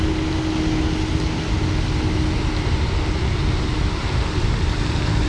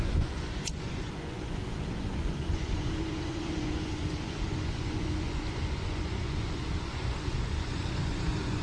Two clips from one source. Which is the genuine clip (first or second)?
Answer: first